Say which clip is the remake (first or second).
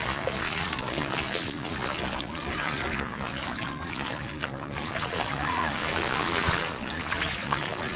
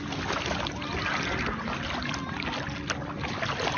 first